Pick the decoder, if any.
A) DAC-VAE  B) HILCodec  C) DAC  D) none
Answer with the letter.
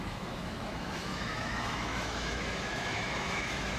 A